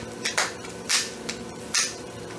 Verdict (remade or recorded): remade